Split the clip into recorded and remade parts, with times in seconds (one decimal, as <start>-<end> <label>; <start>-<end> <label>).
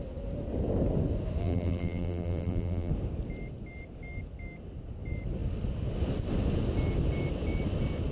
0.0-1.4 recorded; 1.4-2.9 remade; 2.9-8.1 recorded